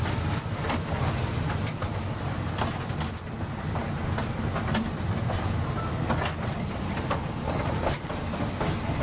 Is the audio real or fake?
real